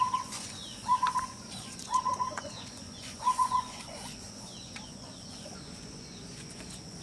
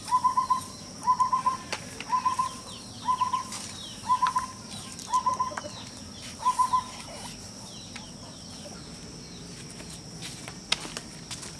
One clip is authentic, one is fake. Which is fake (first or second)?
first